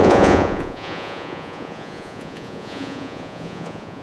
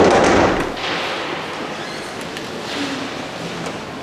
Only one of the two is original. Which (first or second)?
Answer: second